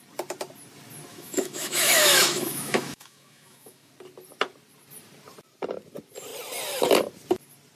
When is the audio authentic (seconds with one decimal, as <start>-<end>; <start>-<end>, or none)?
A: 0.0-1.1; 3.9-7.8